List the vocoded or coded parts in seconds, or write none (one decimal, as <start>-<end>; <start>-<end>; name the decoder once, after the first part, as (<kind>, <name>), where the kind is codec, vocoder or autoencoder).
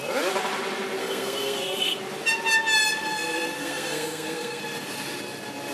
1.0-2.0 (codec, SNAC); 3.6-4.6